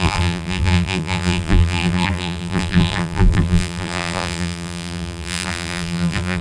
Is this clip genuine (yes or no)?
no